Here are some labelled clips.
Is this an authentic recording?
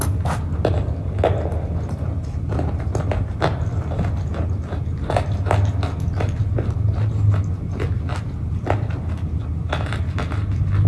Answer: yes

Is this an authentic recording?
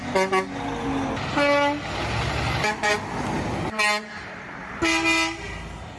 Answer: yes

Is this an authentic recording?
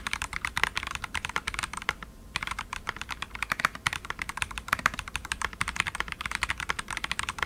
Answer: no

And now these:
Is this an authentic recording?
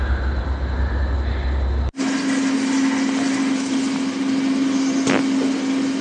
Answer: yes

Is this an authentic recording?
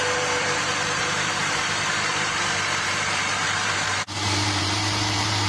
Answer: no